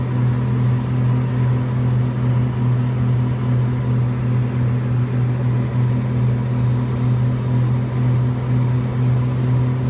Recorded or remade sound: recorded